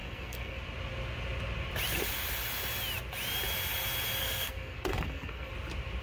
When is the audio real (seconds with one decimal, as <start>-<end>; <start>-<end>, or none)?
0.6-4.2; 5.5-6.0